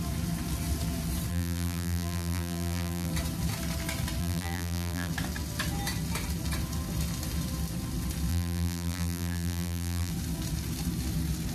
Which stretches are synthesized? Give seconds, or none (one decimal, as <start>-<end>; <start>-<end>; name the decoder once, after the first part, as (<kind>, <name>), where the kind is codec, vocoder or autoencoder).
1.3-3.1 (vocoder, BigVGAN v2); 4.2-5.1; 8.3-10.1